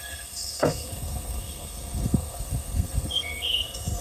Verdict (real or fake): fake